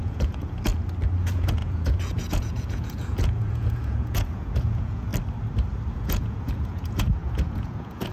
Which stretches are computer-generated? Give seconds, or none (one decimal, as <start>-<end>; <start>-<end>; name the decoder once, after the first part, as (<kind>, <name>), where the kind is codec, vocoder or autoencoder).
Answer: 0.0-0.7 (vocoder, Vocos); 1.2-5.1; 5.9-8.1